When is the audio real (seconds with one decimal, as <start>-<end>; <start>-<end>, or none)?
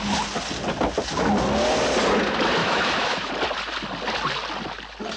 0.0-2.6; 3.3-5.2